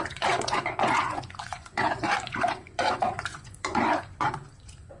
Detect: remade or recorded remade